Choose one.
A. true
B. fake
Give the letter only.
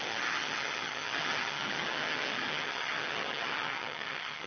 B